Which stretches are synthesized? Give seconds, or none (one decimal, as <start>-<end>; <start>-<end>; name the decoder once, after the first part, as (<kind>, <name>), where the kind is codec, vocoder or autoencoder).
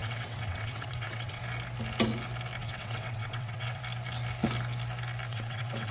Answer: 0.0-1.4 (vocoder, WaveNeXt); 2.6-3.8; 5.3-5.9